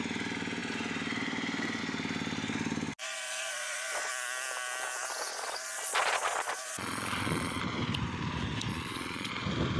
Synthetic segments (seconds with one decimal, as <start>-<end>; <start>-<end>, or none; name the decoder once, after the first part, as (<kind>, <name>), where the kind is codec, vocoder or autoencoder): 3.0-4.1 (vocoder, Vocos); 5.3-7.6; 8.7-9.3